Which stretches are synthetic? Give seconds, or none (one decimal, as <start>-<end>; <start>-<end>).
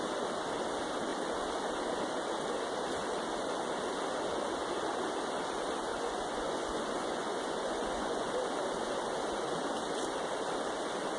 5.9-8.3